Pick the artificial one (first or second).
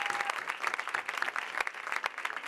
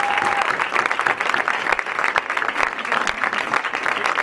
second